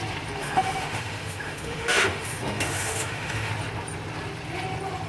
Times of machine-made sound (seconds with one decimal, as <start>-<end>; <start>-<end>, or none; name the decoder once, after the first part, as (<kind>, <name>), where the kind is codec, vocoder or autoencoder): 0.4-3.5 (autoencoder, DAC-VAE)